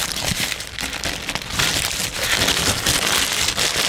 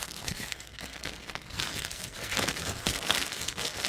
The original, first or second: first